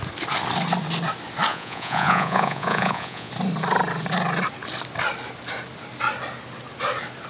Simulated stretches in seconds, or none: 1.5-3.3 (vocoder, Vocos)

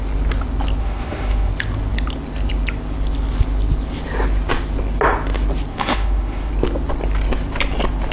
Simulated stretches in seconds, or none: 0.8-1.5 (autoencoder, DAC-VAE); 5.7-6.5